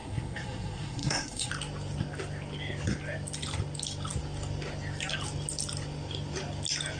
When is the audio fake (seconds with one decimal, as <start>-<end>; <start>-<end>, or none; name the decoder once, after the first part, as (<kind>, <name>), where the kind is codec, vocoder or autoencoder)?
0.0-1.5 (codec, SNAC)